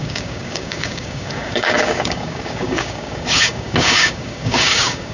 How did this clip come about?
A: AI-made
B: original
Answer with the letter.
A